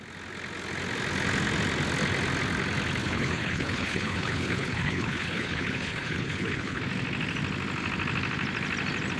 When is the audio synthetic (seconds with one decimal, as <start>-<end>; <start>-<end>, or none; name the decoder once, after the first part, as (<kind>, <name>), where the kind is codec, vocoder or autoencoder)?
3.0-6.8 (codec, HILCodec)